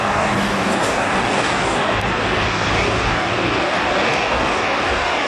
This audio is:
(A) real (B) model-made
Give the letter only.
B